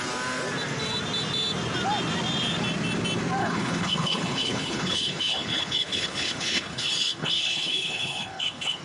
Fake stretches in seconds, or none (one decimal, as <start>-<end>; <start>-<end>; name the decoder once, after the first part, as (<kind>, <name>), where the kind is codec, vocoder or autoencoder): 3.4-8.8 (codec, HILCodec)